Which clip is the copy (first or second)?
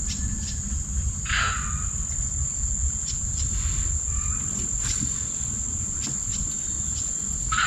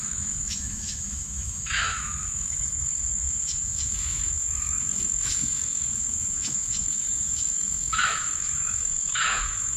second